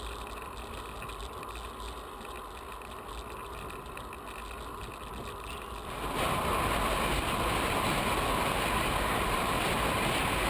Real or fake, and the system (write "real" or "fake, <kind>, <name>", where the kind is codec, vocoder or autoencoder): real